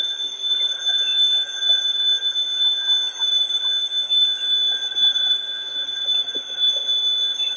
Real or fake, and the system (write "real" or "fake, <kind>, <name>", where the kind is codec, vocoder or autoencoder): real